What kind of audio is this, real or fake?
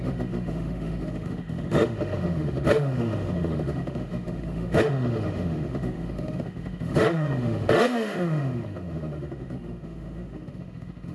fake